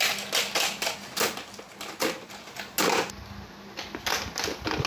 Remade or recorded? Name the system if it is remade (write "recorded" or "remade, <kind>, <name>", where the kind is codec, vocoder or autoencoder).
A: recorded